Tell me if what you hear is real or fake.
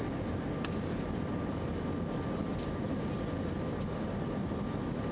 real